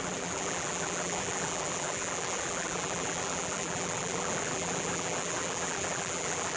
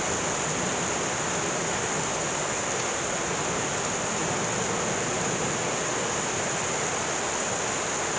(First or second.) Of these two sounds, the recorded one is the second